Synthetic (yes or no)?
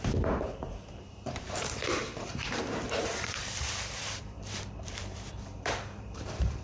yes